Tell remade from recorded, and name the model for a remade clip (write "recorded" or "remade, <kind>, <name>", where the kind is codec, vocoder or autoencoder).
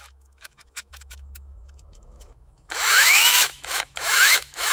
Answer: remade, autoencoder, DAC-VAE